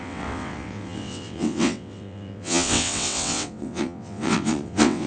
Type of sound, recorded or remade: remade